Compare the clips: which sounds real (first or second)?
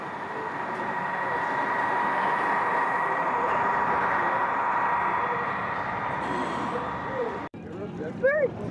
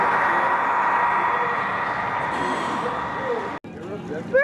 second